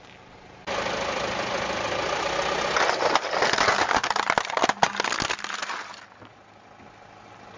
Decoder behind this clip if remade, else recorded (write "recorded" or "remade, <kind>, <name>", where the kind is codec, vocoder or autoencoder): recorded